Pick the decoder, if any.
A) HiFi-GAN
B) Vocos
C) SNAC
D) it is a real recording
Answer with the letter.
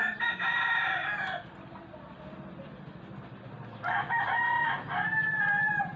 D